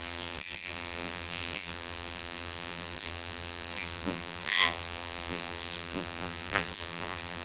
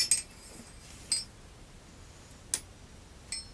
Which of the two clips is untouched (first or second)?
second